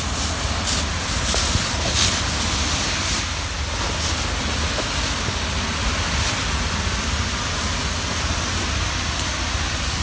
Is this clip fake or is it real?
real